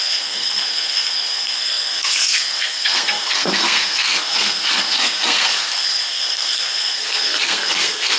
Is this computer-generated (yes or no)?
yes